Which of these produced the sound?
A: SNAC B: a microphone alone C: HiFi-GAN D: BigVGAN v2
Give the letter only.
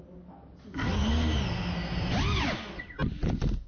B